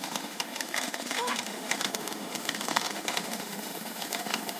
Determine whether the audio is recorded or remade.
remade